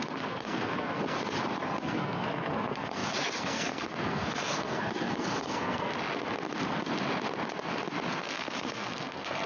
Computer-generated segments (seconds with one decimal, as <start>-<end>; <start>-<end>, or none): 0.0-1.2; 1.8-5.9; 8.1-9.5